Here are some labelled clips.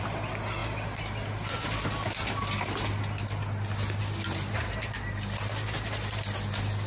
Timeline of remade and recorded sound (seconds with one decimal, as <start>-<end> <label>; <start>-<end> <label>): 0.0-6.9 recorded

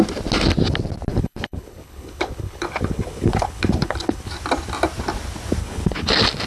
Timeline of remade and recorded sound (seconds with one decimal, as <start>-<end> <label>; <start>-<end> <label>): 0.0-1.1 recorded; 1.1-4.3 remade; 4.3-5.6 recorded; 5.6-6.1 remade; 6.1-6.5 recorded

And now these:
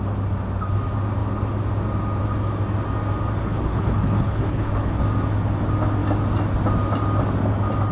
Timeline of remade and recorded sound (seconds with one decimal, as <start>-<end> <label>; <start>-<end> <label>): 0.0-3.4 recorded; 3.4-5.0 remade; 5.0-7.9 recorded

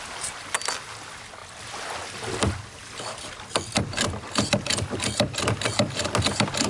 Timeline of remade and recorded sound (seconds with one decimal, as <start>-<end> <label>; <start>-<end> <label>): 0.0-6.7 recorded

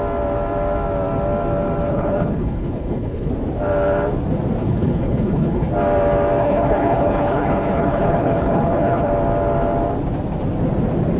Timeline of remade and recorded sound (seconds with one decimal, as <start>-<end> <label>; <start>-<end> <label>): 0.0-1.9 recorded; 1.9-3.3 remade; 3.3-4.6 recorded; 4.6-5.7 remade; 5.7-6.4 recorded; 6.4-9.1 remade; 9.1-11.2 recorded

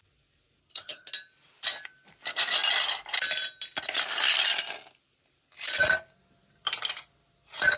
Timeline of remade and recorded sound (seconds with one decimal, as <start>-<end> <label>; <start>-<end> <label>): 0.0-0.6 recorded; 0.6-1.1 remade; 1.1-7.8 recorded

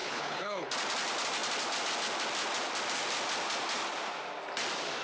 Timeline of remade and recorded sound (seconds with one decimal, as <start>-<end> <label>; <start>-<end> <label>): 0.0-0.7 remade; 0.7-5.0 recorded

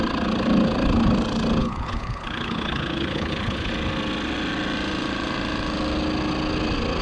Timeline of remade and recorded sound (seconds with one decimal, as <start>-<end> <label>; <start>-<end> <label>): 0.0-1.6 recorded; 1.6-3.7 remade; 3.7-7.0 recorded